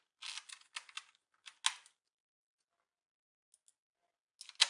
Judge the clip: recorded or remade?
recorded